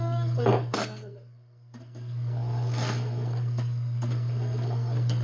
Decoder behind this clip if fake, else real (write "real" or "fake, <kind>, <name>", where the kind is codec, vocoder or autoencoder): fake, codec, SNAC